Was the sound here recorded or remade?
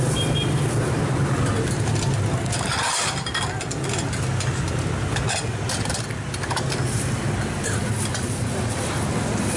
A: recorded